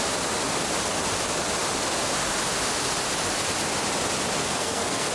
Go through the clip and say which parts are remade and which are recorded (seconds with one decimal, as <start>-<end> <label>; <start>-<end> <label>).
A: 0.0-4.4 recorded; 4.4-5.1 remade